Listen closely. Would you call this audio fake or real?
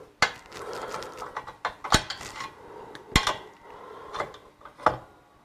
real